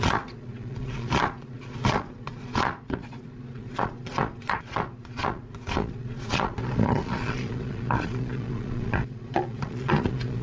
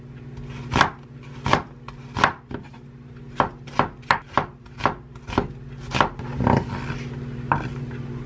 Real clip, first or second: second